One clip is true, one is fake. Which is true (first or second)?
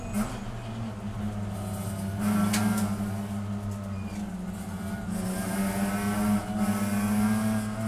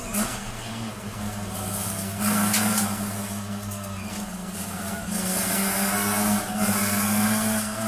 first